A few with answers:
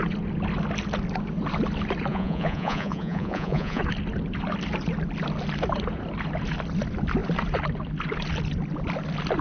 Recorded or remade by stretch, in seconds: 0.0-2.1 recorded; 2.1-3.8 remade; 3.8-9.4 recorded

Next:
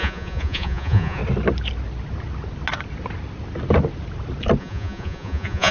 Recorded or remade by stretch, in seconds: 0.0-1.2 remade; 1.2-4.6 recorded; 4.6-5.7 remade

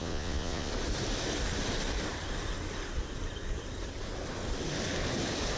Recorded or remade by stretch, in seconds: 0.0-0.7 remade; 0.7-5.6 recorded

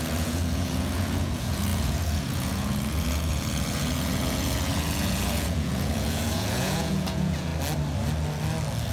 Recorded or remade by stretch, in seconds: 0.0-7.5 remade; 7.5-8.9 recorded

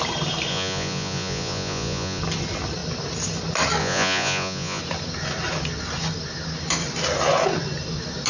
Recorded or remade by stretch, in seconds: 0.0-0.5 recorded; 0.5-2.2 remade; 2.2-3.8 recorded; 3.8-4.8 remade; 4.8-8.3 recorded